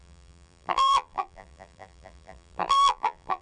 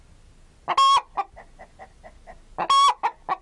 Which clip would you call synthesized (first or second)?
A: first